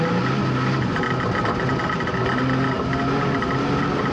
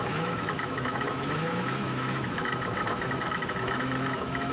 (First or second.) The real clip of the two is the first